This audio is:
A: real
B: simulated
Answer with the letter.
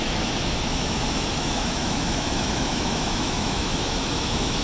B